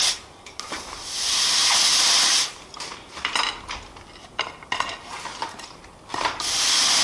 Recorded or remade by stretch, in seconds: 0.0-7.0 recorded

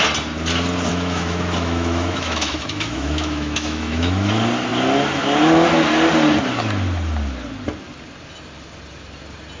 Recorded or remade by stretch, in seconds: 0.0-0.9 recorded; 0.9-4.3 remade; 4.3-9.6 recorded

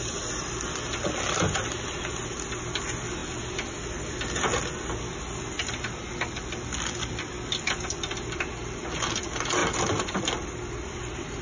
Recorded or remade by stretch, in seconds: 0.0-9.6 recorded; 9.6-10.2 remade; 10.2-11.4 recorded

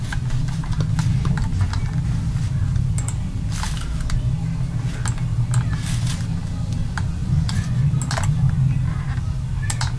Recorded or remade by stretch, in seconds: 0.0-7.2 recorded; 7.2-7.9 remade; 7.9-10.0 recorded

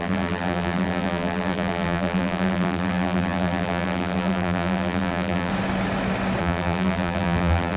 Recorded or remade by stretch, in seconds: 0.0-5.5 remade; 5.5-6.4 recorded; 6.4-7.8 remade

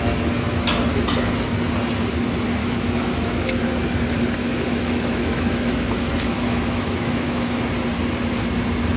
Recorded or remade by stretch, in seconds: 0.0-2.6 recorded; 2.6-3.6 remade; 3.6-4.4 recorded; 4.4-7.6 remade; 7.6-9.0 recorded

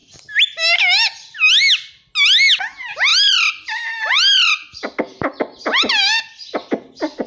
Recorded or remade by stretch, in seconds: 0.0-3.1 recorded; 3.1-7.3 remade

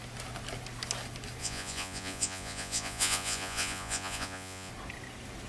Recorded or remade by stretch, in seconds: 0.0-1.4 recorded; 1.4-4.7 remade; 4.7-5.5 recorded